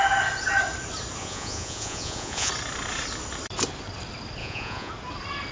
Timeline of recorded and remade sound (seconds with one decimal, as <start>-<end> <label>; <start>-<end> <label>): 0.0-1.2 recorded; 1.2-2.5 remade; 2.5-4.4 recorded; 4.4-4.9 remade; 4.9-5.5 recorded